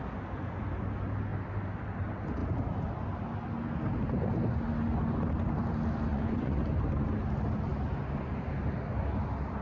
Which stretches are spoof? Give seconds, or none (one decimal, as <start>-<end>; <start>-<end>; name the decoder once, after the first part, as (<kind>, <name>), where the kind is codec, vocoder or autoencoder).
6.1-6.6 (vocoder, Vocos)

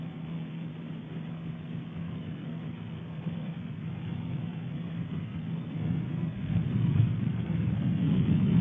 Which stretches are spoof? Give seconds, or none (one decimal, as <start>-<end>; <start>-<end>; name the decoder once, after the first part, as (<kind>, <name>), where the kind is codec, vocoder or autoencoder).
0.0-0.7 (codec, SNAC); 1.3-8.6

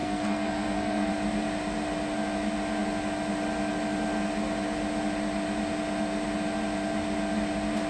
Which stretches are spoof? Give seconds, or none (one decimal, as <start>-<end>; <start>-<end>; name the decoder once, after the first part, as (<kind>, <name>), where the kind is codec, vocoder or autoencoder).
0.0-1.1 (codec, SNAC)

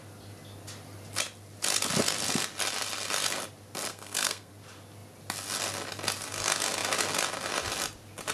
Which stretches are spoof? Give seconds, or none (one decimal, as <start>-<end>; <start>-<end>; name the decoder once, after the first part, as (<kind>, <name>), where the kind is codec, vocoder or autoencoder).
3.9-4.5 (codec, SNAC)

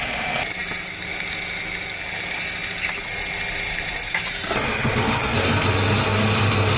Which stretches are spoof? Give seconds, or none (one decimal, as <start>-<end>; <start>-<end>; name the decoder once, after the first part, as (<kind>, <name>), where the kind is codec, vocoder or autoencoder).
none